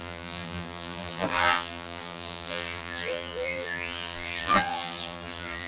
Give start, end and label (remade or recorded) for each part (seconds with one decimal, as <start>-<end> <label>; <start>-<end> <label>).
0.0-5.7 remade

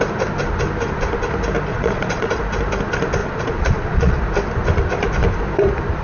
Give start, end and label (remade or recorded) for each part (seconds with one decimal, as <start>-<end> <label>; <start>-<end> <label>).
0.0-1.7 recorded; 1.7-2.3 remade; 2.3-3.2 recorded; 3.2-4.2 remade; 4.2-6.0 recorded

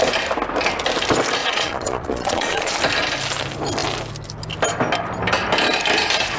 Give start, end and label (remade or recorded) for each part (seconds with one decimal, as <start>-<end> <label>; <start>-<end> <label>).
0.0-1.4 recorded; 1.4-2.7 remade; 2.7-6.4 recorded

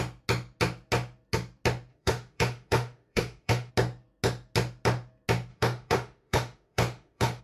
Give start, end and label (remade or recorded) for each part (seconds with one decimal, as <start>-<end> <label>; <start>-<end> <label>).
0.0-1.9 recorded; 1.9-3.7 remade; 3.7-5.5 recorded; 5.5-7.4 remade

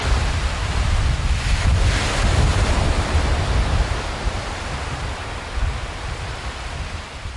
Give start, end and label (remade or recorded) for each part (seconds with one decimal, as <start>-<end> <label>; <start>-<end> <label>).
0.0-1.7 remade; 1.7-2.5 recorded; 2.5-7.4 remade

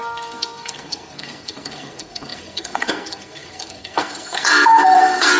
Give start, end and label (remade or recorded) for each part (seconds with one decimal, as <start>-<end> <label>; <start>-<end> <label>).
0.0-5.4 remade

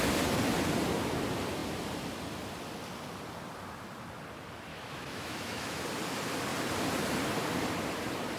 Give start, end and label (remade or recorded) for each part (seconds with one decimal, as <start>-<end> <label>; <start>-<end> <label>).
0.0-4.7 recorded; 4.7-5.8 remade; 5.8-8.4 recorded

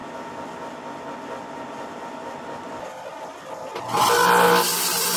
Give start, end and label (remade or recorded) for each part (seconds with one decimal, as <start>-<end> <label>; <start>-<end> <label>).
0.0-5.2 recorded